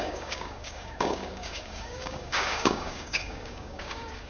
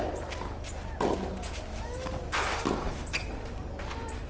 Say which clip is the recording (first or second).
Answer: second